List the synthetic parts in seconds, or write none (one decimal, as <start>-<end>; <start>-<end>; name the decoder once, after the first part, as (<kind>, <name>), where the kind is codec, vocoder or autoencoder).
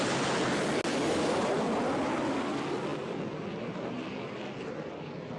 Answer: 0.9-1.5 (codec, DAC)